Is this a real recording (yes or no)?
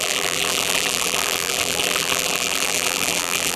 no